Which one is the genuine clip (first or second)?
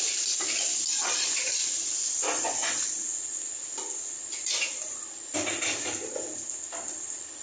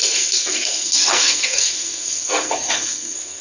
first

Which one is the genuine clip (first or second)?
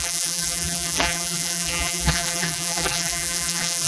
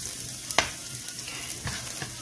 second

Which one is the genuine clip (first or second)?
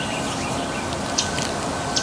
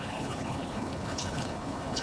first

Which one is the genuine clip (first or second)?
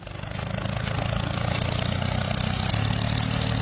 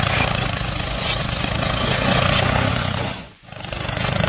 first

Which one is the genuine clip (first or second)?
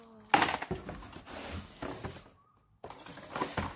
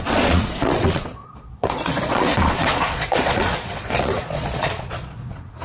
first